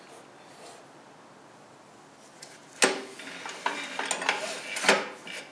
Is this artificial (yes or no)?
no